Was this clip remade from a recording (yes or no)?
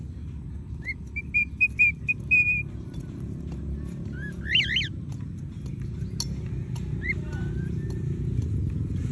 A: no